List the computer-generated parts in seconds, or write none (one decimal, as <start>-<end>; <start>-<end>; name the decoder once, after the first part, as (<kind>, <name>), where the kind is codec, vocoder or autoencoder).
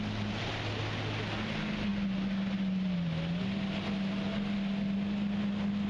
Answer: none